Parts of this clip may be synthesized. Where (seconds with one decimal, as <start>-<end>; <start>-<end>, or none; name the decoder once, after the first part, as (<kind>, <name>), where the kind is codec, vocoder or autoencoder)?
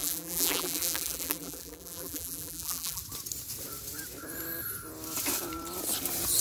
0.0-3.0 (vocoder, BigVGAN v2)